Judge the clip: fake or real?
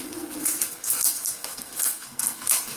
fake